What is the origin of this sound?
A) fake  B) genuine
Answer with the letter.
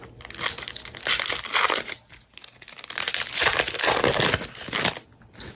B